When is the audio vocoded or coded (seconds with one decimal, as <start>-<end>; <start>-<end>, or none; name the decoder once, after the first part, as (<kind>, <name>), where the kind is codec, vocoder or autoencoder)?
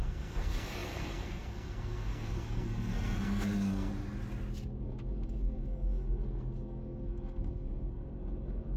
0.0-3.9 (codec, SNAC); 4.8-8.8